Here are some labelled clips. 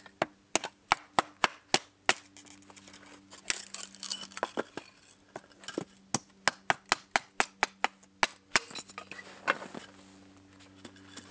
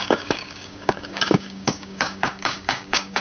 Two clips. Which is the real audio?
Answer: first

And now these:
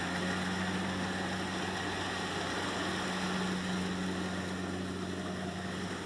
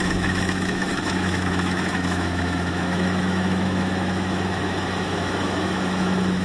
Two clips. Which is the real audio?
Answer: first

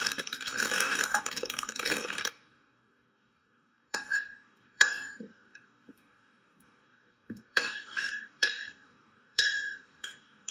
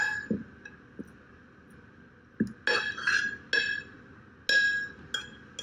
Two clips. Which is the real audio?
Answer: second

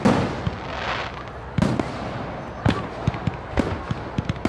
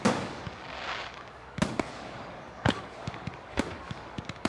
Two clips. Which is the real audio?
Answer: first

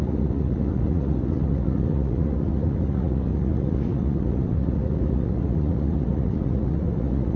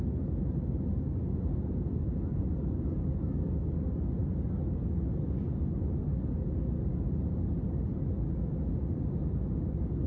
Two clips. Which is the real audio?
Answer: second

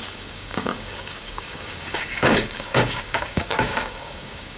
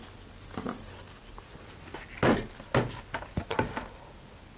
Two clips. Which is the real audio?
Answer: second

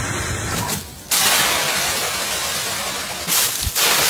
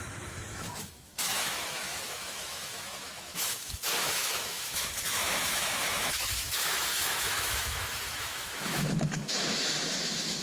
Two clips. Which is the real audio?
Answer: first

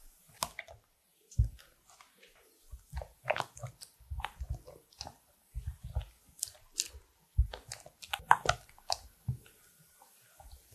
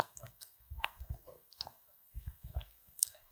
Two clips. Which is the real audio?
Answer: first